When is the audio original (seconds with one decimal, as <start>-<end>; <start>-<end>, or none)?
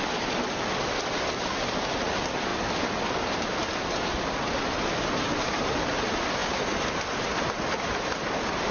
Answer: 0.0-8.7